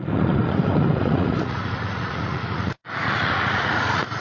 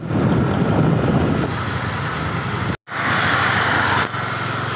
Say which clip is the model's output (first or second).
first